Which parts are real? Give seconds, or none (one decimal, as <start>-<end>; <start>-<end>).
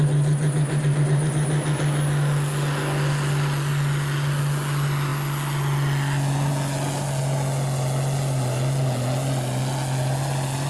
0.0-10.7